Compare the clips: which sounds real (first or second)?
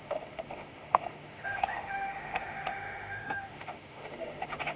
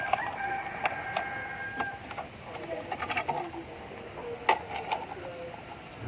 second